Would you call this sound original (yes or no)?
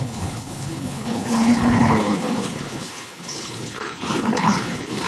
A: no